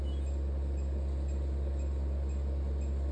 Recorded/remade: recorded